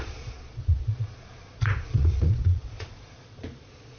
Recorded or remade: remade